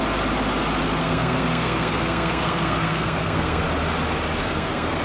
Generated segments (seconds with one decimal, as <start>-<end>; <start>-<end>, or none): 1.0-3.6; 4.4-5.0